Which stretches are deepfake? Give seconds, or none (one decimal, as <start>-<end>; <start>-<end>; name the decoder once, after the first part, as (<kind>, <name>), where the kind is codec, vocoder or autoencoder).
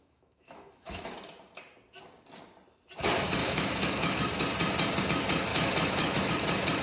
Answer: 0.0-1.1 (autoencoder, DAC-VAE); 3.4-4.2; 5.5-6.3